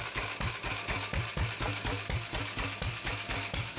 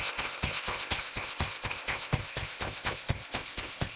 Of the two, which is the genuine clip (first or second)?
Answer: first